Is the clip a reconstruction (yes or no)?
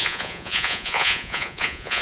yes